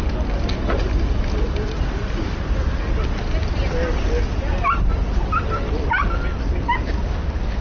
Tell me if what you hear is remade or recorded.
recorded